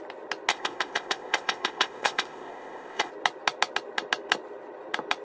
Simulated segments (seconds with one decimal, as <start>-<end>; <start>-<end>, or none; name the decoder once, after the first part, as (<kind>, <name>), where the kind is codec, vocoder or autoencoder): 0.5-3.1 (codec, ZipCodec)